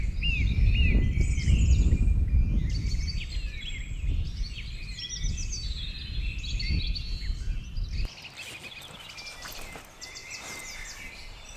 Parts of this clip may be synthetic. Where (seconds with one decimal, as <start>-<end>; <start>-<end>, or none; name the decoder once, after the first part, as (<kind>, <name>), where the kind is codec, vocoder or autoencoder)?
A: none